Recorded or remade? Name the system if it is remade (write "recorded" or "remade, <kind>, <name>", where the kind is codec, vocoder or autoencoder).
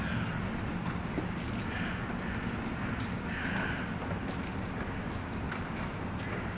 recorded